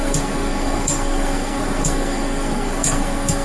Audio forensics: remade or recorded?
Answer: remade